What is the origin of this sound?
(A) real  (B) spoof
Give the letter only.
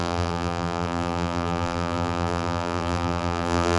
B